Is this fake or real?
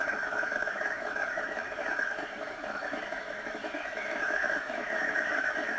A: fake